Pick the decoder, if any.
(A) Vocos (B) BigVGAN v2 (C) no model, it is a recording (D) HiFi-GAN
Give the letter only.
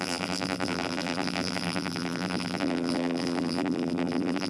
B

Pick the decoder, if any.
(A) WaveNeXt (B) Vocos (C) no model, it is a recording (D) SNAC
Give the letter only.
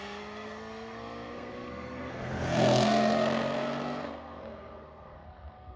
D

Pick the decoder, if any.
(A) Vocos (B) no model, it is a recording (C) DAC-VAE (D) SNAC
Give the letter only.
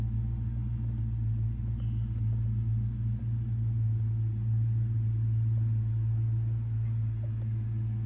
B